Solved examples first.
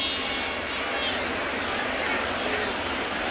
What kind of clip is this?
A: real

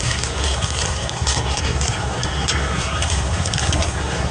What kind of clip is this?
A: fake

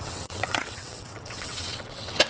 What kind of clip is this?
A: fake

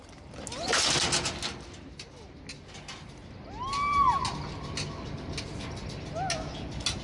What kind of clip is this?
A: real